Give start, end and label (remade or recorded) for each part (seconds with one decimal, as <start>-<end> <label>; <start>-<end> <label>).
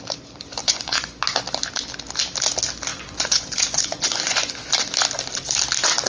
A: 0.0-0.6 recorded; 0.6-1.2 remade; 1.2-2.9 recorded; 2.9-4.7 remade; 4.7-6.1 recorded